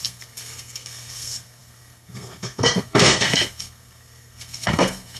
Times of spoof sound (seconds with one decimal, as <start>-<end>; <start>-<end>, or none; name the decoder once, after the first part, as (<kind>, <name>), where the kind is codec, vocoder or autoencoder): 0.0-5.2 (codec, SNAC)